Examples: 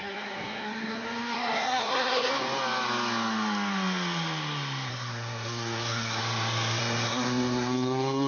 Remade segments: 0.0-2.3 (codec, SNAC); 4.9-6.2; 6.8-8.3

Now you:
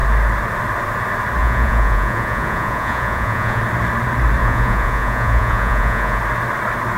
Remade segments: 1.4-3.6 (vocoder, Vocos); 4.4-6.2

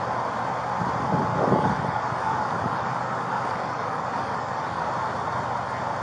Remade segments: 1.3-4.9 (codec, DAC)

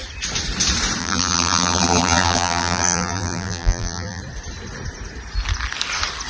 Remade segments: 1.0-4.2 (vocoder, BigVGAN v2)

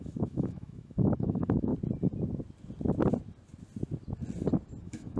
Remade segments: 0.0-1.7 (autoencoder, DAC-VAE); 4.8-5.2

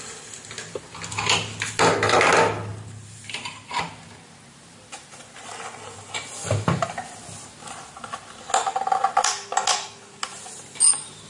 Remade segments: 2.7-3.8 (vocoder, BigVGAN v2)